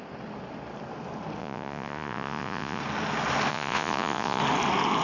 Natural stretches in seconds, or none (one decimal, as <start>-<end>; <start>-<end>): 0.0-1.4; 2.8-3.5; 4.4-5.0